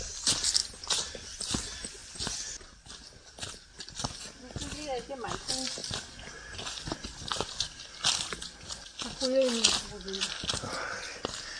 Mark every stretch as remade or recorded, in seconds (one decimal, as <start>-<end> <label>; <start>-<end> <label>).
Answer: 0.0-0.6 recorded; 0.6-1.1 remade; 1.1-11.6 recorded